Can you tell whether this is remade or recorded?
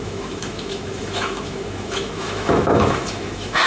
remade